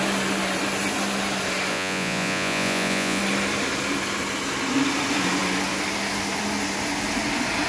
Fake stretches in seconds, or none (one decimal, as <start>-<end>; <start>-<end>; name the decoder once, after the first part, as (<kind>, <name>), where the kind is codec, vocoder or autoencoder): 1.7-3.2 (vocoder, Vocos)

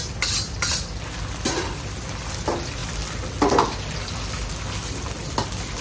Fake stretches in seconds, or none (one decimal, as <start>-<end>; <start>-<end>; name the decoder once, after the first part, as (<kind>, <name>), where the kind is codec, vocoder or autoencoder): none

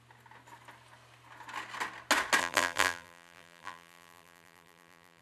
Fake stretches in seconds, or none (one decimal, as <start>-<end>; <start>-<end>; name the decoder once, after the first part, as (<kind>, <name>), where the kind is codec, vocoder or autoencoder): 2.4-5.2 (vocoder, BigVGAN v2)